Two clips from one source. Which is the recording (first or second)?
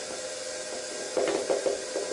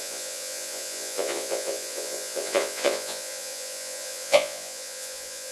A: first